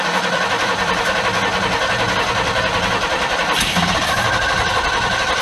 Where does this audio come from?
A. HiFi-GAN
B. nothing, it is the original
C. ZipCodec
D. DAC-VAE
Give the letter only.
B